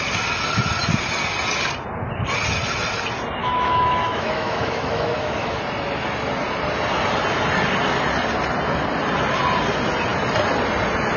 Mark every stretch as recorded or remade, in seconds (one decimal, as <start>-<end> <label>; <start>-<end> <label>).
0.0-3.4 recorded; 3.4-5.6 remade; 5.6-11.2 recorded